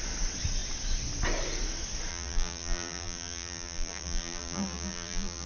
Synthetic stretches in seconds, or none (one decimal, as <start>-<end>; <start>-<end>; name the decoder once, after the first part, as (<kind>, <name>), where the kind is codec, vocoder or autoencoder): 2.1-5.5 (vocoder, BigVGAN v2)